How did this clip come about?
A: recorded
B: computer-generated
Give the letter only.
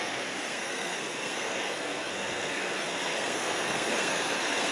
B